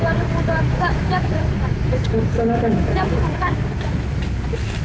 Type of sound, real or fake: real